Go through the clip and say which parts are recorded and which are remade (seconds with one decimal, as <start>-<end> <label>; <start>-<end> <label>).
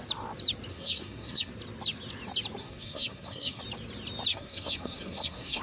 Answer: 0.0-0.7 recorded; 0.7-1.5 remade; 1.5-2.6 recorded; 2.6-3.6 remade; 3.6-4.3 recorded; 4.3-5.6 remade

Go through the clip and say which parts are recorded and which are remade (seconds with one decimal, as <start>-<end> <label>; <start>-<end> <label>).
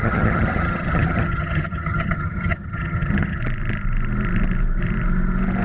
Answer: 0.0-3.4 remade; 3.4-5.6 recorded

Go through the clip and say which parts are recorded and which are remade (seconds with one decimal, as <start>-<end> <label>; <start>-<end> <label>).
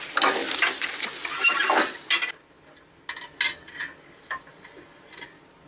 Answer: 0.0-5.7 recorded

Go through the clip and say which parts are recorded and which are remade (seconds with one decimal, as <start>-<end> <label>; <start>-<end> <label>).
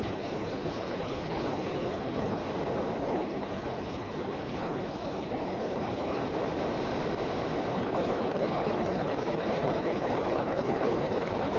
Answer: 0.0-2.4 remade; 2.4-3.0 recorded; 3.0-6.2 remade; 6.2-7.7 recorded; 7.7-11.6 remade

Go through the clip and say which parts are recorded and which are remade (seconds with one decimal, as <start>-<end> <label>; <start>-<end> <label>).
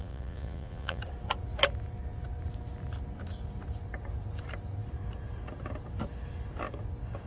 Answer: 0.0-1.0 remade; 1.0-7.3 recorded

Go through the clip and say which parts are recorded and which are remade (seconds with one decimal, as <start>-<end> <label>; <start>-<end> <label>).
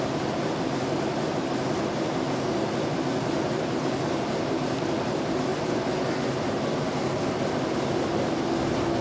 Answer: 0.0-5.5 recorded; 5.5-6.3 remade; 6.3-9.0 recorded